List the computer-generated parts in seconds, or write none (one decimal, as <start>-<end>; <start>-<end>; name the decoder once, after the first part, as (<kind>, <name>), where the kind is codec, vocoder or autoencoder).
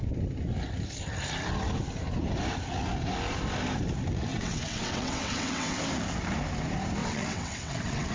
4.3-5.8 (vocoder, WaveNeXt); 7.0-8.1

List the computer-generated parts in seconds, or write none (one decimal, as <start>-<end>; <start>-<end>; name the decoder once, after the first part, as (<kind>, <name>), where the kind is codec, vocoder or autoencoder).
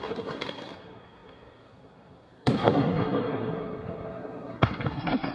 0.0-5.3 (codec, SNAC)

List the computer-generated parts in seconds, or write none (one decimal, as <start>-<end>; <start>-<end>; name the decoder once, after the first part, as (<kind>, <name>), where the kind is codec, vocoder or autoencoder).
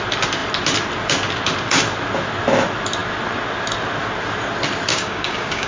4.9-5.7 (codec, DAC)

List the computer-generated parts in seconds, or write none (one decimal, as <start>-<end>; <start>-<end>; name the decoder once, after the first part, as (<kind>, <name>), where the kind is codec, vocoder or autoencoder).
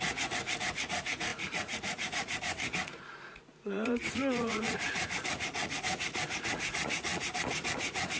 0.0-8.2 (vocoder, Vocos)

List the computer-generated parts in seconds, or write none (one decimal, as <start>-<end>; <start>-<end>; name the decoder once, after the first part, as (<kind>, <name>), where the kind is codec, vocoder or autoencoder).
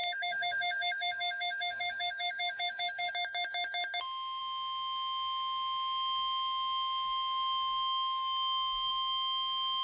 0.0-3.1 (codec, SNAC)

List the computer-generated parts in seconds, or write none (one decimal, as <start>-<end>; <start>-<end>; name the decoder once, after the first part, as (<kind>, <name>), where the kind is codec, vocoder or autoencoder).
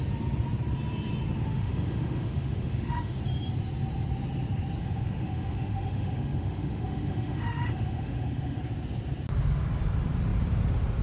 1.5-3.2 (autoencoder, DAC-VAE); 4.8-8.6